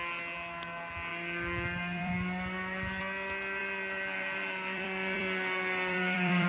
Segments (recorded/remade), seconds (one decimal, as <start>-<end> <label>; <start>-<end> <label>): 0.0-1.1 recorded; 1.1-3.0 remade; 3.0-3.6 recorded; 3.6-6.5 remade